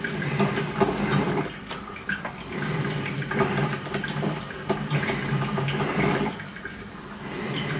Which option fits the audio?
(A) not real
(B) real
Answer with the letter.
B